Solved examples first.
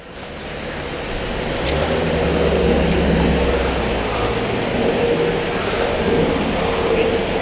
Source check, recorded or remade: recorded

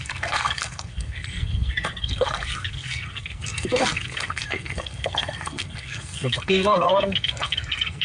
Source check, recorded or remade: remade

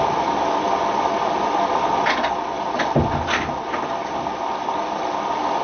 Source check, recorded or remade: recorded